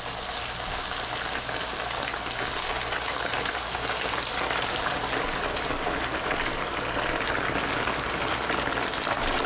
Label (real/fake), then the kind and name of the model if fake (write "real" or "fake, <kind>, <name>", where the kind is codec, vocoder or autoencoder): real